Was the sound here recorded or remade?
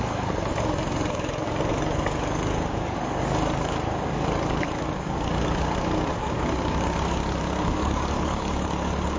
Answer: remade